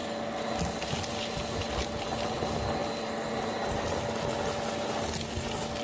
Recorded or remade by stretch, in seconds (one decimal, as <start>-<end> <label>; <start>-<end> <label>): 0.0-5.8 recorded